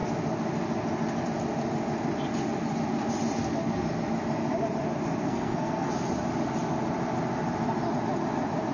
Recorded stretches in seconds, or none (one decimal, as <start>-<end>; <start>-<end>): 0.0-5.2; 5.9-8.7